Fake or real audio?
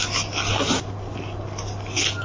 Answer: real